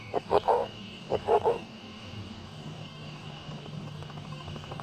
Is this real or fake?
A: fake